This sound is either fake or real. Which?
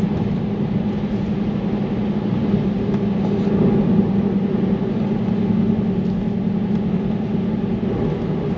real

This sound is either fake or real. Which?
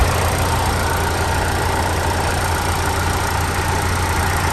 real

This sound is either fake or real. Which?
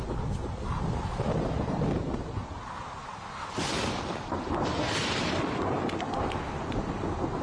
real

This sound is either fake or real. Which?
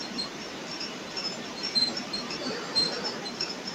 fake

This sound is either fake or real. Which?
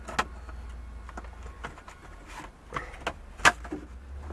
real